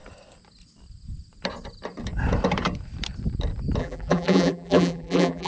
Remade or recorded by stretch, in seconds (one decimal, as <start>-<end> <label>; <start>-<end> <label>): 0.0-3.8 recorded; 3.8-5.5 remade